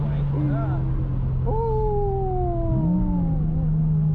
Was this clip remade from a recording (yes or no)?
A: no